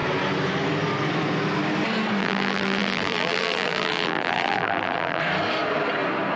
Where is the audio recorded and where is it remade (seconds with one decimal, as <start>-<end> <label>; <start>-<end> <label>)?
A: 0.0-2.2 recorded; 2.2-5.2 remade; 5.2-6.4 recorded